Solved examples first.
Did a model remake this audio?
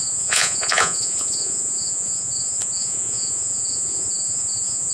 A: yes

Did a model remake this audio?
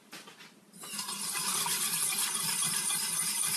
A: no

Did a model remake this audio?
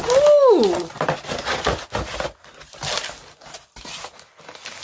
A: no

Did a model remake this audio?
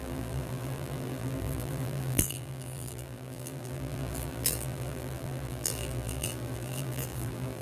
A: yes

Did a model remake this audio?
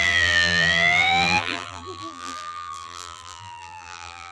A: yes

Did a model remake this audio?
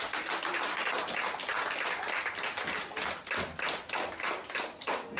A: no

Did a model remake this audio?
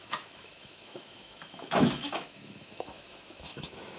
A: yes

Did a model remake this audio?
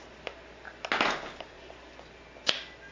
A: no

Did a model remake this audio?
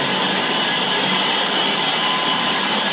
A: no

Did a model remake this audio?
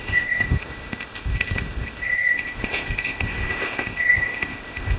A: yes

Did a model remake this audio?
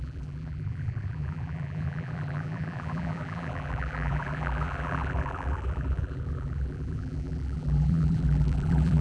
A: yes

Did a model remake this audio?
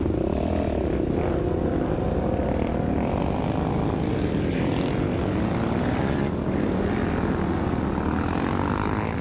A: no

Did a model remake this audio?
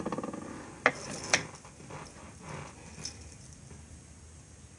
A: no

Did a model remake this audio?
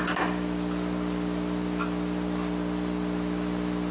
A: no